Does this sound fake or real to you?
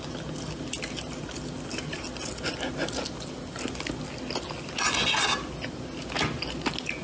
real